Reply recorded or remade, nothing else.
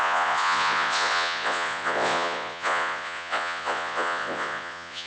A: remade